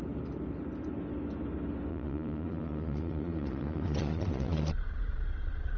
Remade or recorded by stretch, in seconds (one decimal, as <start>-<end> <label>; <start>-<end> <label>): 0.0-1.9 recorded; 1.9-5.8 remade